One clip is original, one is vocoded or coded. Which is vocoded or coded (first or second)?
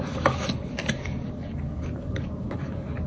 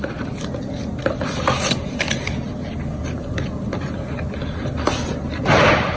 first